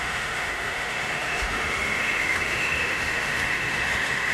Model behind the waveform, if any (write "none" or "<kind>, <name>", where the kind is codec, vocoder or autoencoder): autoencoder, DAC-VAE